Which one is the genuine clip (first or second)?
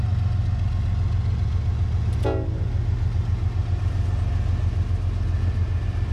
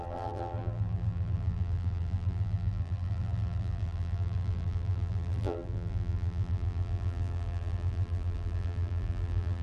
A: first